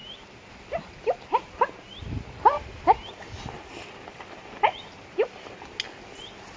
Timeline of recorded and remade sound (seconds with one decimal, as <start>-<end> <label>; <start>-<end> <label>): 0.0-6.6 recorded